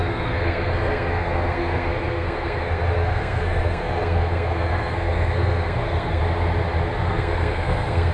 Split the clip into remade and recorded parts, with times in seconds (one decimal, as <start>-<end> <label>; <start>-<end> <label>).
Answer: 0.0-6.2 remade; 6.2-7.1 recorded; 7.1-8.1 remade